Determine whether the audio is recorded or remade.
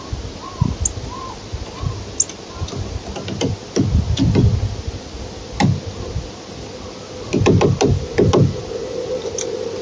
recorded